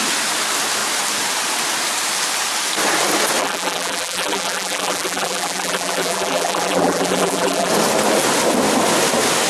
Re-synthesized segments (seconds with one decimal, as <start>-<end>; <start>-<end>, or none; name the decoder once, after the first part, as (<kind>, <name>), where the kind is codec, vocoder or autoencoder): 3.4-7.7 (vocoder, BigVGAN v2)